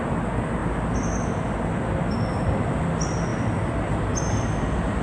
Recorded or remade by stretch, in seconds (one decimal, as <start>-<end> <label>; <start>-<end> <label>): 0.0-5.0 recorded